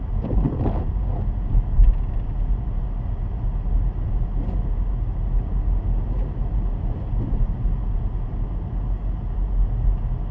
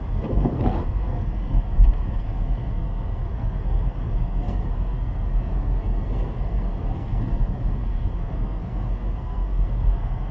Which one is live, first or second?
first